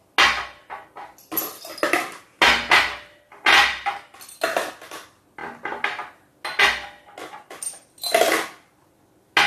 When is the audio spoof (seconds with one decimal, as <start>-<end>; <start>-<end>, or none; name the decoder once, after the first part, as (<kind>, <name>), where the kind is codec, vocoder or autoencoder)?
none